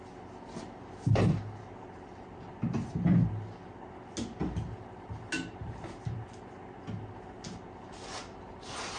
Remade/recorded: recorded